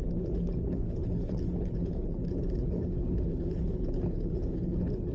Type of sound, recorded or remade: remade